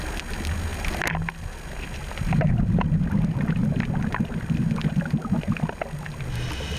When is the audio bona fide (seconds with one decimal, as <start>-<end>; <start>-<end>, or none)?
0.0-6.8